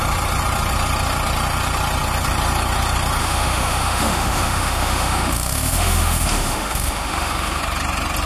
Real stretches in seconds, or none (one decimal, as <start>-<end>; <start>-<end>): 0.0-3.2; 7.6-8.3